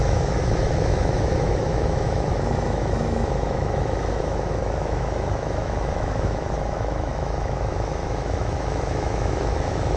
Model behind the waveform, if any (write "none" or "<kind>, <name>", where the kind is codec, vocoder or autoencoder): autoencoder, DAC-VAE